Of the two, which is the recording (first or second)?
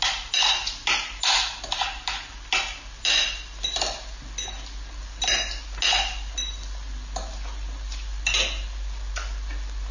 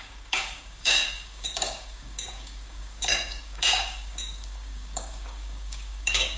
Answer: first